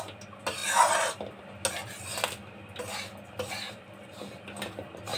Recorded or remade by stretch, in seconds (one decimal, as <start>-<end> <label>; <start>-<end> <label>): 0.0-5.2 recorded